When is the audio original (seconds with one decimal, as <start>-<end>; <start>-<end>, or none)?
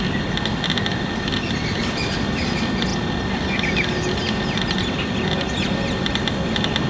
0.0-6.9